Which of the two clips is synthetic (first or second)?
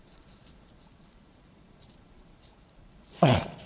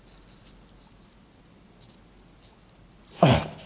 first